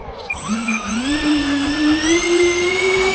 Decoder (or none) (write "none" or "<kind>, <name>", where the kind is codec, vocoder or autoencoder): vocoder, Vocos